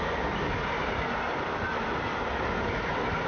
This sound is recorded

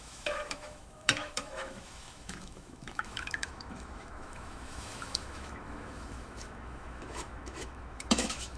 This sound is remade